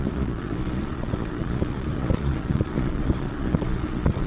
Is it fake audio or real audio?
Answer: fake